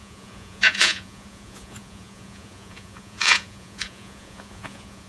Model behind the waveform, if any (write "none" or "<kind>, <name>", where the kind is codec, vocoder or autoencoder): vocoder, Vocos